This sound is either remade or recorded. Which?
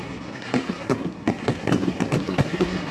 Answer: remade